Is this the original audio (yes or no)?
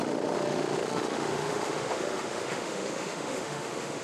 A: no